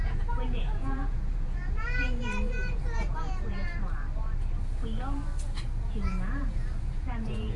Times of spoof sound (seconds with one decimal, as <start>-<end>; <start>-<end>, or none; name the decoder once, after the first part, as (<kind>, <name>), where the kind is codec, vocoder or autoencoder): 0.0-3.7 (vocoder, Vocos); 5.8-7.6